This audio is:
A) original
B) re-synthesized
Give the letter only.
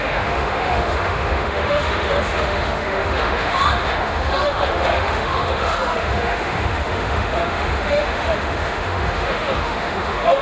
B